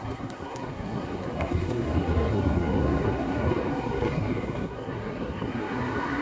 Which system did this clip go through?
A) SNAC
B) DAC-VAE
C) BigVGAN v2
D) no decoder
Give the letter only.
A